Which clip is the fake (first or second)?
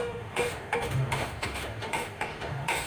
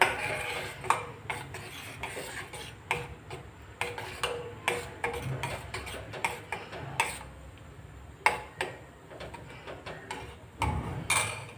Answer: first